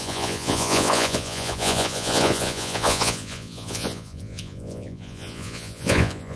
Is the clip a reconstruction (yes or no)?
yes